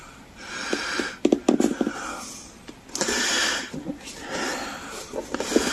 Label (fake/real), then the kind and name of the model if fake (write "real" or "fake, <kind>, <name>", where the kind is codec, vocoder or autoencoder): real